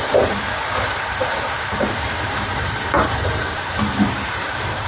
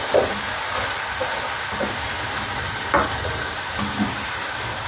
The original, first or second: second